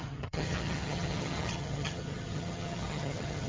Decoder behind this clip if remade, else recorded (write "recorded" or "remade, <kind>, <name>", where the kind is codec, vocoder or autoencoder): remade, vocoder, HiFi-GAN